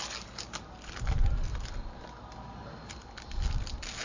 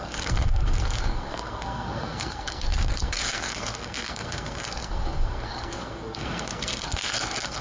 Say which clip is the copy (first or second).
second